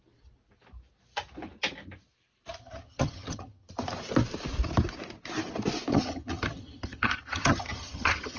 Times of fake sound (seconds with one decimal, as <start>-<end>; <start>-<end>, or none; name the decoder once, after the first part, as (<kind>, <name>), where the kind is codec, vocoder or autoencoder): 2.6-3.7 (vocoder, HiFi-GAN); 5.9-8.4